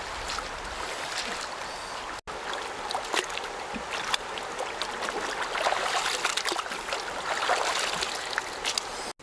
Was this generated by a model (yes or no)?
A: no